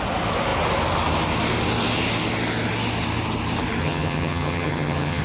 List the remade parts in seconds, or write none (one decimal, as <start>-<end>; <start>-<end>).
3.8-5.2